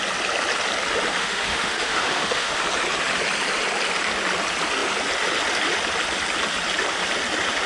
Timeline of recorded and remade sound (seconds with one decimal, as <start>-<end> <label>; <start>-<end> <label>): 0.0-1.2 recorded; 1.2-2.6 remade; 2.6-7.7 recorded

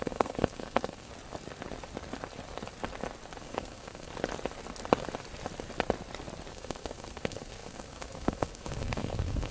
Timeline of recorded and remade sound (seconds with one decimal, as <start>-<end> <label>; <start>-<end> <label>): 0.0-1.1 remade; 1.1-3.4 recorded; 3.4-4.1 remade; 4.1-6.5 recorded; 6.5-9.5 remade